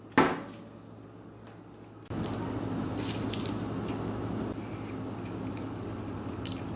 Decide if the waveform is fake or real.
real